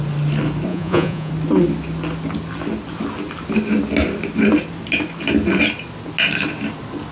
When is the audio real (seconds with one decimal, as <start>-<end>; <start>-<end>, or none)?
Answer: 0.0-0.7; 1.3-7.1